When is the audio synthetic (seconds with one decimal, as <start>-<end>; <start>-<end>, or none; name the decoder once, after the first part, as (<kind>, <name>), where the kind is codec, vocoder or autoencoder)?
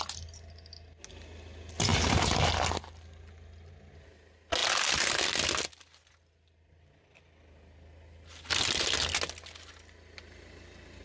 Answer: none